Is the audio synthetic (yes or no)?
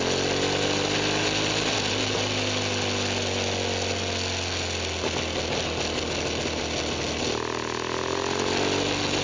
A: no